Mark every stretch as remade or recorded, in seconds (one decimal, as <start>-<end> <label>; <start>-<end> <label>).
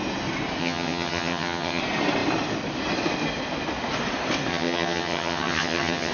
0.0-0.6 recorded; 0.6-1.8 remade; 1.8-4.5 recorded; 4.5-6.1 remade